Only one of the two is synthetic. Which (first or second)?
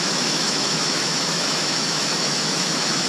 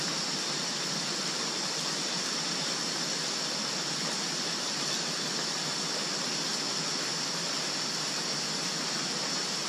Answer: first